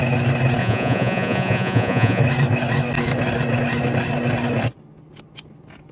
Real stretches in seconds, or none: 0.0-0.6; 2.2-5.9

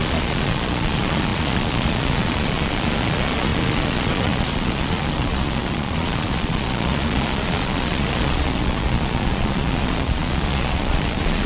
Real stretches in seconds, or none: none